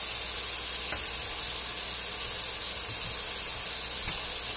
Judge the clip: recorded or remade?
recorded